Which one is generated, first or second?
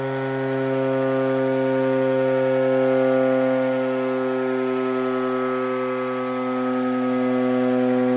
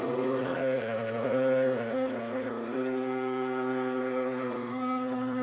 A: second